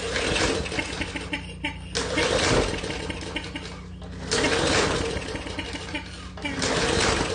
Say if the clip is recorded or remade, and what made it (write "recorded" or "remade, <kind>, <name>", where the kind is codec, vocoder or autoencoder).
recorded